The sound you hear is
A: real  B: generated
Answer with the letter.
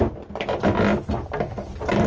A